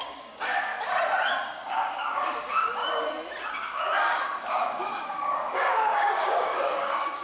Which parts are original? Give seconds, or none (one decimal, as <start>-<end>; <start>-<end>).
0.7-1.4; 2.8-3.5